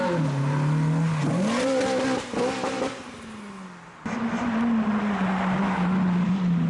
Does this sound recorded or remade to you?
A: recorded